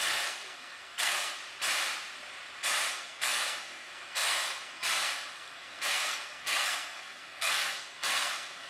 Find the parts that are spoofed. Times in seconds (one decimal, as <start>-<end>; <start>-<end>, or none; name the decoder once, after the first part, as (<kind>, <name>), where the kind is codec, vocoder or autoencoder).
0.0-1.4 (codec, SNAC); 2.9-8.7